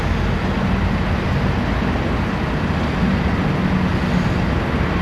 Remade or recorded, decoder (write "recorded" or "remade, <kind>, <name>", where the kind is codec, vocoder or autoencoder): recorded